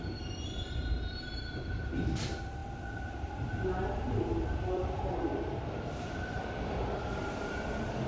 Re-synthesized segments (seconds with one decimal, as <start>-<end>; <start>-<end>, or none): 0.0-5.6